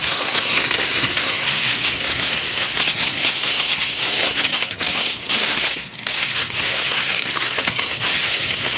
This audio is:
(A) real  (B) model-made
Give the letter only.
B